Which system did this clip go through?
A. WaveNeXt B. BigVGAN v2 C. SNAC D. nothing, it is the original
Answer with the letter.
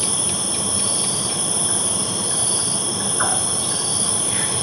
B